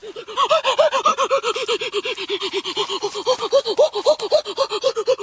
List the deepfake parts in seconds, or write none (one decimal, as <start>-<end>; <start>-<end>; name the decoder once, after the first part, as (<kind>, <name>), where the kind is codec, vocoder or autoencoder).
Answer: none